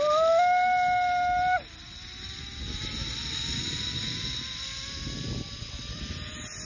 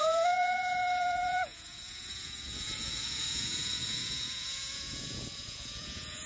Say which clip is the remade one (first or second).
second